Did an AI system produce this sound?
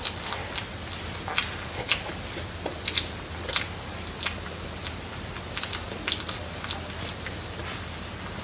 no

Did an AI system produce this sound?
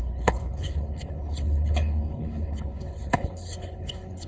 yes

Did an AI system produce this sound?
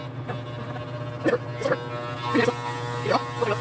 no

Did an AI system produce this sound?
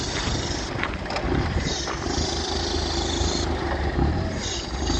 no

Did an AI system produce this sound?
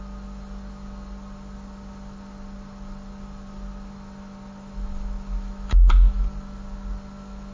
no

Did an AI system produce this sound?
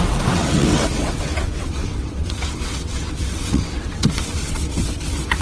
yes